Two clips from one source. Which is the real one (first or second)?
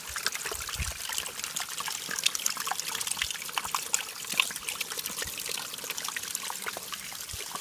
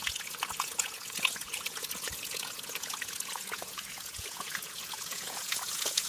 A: first